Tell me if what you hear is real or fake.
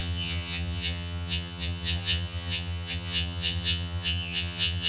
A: fake